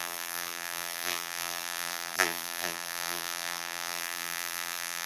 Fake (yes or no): yes